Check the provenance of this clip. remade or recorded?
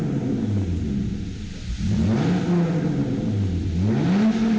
recorded